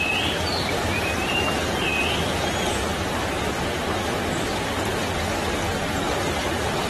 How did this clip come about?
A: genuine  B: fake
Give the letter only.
A